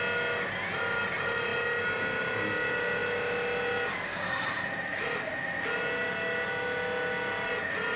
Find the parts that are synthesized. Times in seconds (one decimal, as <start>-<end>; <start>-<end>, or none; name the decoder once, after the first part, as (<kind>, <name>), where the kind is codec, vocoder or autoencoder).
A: none